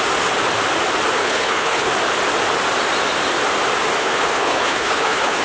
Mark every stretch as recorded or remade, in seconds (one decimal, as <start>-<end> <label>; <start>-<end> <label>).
0.0-1.2 recorded; 1.2-1.9 remade; 1.9-4.0 recorded; 4.0-5.4 remade